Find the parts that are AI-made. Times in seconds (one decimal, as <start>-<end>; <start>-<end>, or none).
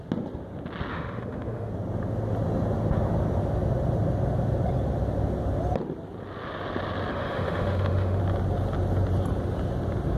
0.9-1.7; 7.1-8.2